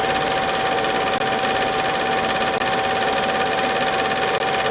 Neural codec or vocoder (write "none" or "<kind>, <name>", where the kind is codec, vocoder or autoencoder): none